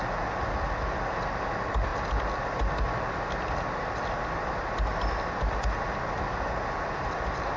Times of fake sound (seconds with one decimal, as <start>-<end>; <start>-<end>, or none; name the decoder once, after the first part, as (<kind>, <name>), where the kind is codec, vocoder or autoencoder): none